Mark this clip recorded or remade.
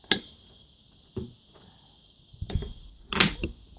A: recorded